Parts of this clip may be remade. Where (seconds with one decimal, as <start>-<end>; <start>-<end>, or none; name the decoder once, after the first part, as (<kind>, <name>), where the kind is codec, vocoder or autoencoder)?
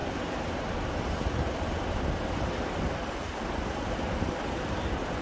0.0-5.2 (vocoder, BigVGAN v2)